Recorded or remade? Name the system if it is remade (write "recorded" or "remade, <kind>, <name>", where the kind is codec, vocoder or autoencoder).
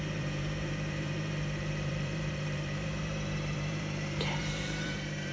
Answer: remade, vocoder, BigVGAN v2